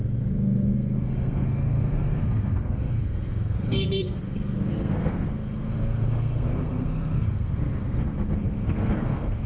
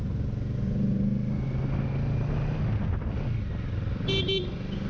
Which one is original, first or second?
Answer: second